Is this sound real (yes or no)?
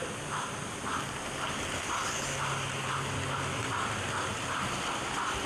yes